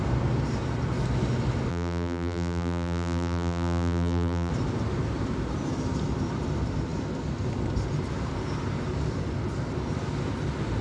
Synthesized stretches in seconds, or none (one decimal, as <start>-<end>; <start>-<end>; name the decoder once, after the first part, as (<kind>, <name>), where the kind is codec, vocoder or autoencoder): 1.7-4.5 (vocoder, BigVGAN v2)